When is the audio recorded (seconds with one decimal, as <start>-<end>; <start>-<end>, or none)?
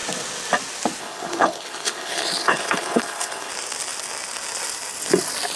0.0-1.0; 3.5-5.6